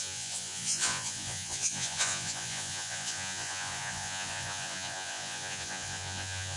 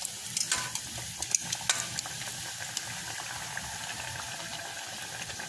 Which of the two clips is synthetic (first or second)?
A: first